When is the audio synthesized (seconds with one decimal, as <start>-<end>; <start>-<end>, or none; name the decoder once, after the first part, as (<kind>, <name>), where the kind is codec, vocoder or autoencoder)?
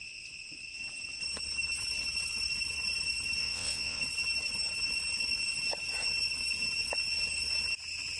3.4-4.0 (vocoder, WaveNeXt)